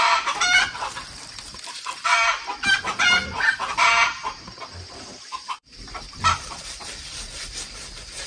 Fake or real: fake